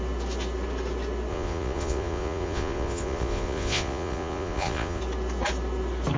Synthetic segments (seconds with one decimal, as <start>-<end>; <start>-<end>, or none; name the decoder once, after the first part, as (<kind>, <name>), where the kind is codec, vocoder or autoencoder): 1.3-5.0 (vocoder, Vocos)